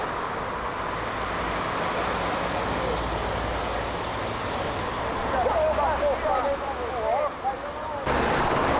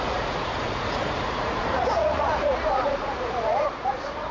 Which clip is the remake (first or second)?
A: second